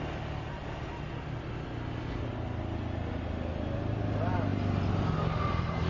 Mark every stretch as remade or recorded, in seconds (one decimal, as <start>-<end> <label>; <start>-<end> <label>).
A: 0.0-5.9 recorded